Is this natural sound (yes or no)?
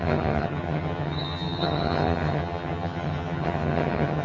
no